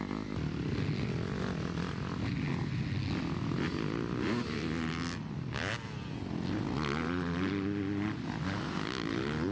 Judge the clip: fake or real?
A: real